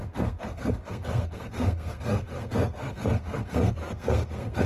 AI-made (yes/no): yes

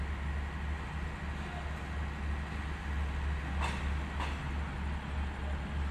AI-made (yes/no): no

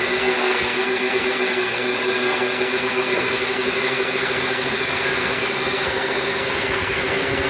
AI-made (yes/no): yes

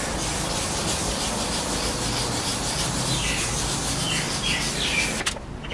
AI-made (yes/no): no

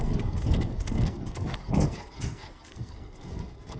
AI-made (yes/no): yes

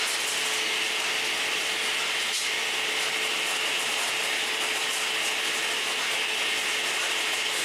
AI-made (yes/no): no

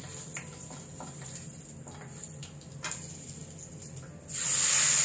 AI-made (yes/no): no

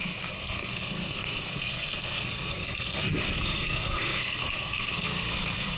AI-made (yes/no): yes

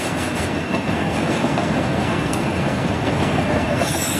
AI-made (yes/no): yes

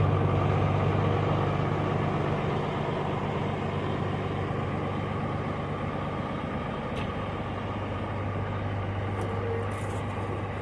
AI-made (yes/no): no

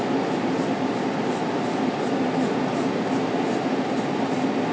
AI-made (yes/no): no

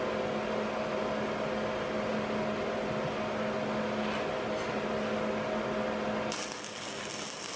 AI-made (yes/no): no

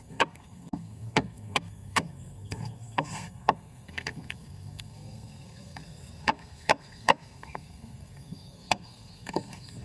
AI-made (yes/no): yes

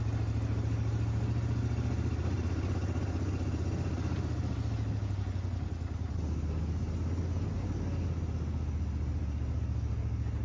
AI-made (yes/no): no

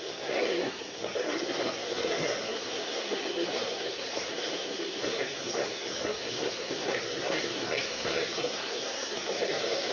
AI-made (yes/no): yes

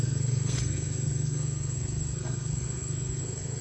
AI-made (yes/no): yes